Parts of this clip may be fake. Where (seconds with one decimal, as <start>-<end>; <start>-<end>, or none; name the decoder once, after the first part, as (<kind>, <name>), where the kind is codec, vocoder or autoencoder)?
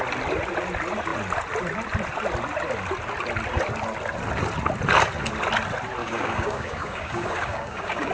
6.0-8.1 (codec, DAC)